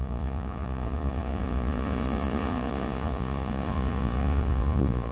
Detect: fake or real fake